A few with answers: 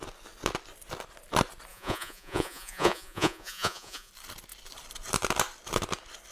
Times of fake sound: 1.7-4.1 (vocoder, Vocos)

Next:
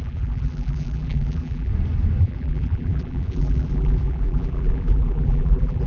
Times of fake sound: 0.0-1.7 (vocoder, BigVGAN v2); 2.2-5.9

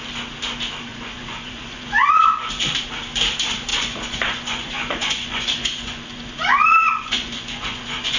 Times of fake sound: 0.9-2.5 (vocoder, Vocos); 3.7-8.2

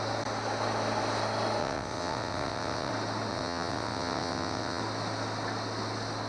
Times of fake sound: 1.6-2.9 (vocoder, WaveNeXt); 3.3-4.8

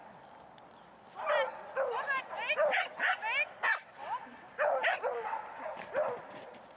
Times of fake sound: 0.0-2.2 (vocoder, BigVGAN v2)

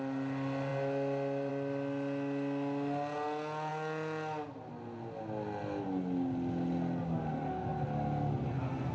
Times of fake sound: none

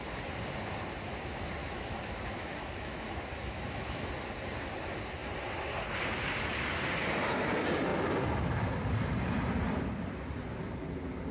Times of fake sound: 1.6-4.1 (autoencoder, DAC-VAE)

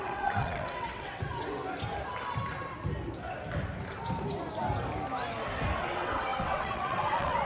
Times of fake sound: 0.0-1.6 (vocoder, WaveNeXt); 5.8-7.5